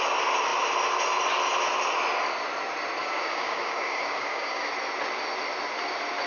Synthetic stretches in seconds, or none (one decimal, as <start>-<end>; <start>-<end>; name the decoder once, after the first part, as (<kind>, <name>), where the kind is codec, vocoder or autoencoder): 3.0-4.7 (codec, DAC)